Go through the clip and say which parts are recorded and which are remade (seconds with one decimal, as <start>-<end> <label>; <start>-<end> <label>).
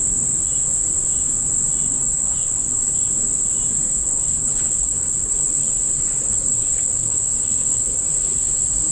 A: 0.0-2.0 recorded; 2.0-3.1 remade; 3.1-4.0 recorded; 4.0-8.4 remade; 8.4-8.9 recorded